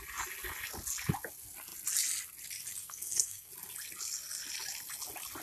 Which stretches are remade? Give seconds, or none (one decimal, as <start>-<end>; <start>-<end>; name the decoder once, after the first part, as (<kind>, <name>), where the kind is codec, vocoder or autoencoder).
2.8-3.5 (codec, SNAC)